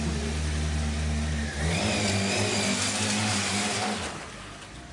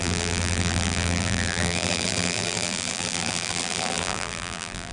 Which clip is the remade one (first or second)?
second